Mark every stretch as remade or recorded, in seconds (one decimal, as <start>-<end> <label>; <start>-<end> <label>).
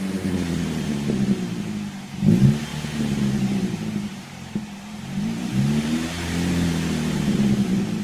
0.0-2.7 recorded; 2.7-7.5 remade; 7.5-8.0 recorded